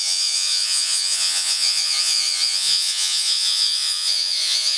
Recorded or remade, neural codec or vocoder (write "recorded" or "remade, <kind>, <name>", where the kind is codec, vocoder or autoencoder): remade, vocoder, Vocos